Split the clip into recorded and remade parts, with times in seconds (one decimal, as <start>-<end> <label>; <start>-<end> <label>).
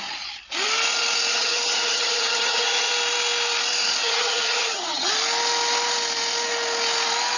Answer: 0.0-1.3 recorded; 1.3-2.9 remade; 2.9-4.0 recorded; 4.0-5.1 remade; 5.1-7.4 recorded